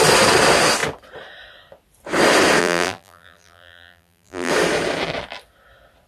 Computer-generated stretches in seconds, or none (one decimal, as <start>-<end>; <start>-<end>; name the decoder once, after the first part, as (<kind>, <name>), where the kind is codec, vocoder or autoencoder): 2.6-4.5 (vocoder, BigVGAN v2)